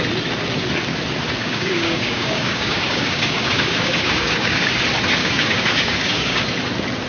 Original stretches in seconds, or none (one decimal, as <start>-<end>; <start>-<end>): 0.0-1.4; 4.8-5.2; 6.4-7.1